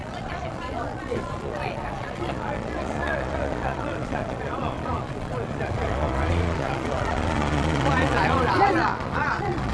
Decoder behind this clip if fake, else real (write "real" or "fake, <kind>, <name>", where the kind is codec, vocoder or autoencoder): fake, vocoder, Vocos